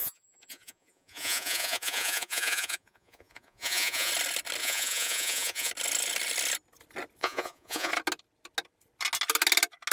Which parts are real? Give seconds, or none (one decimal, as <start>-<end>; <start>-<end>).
4.1-4.6; 5.7-7.2; 7.9-9.9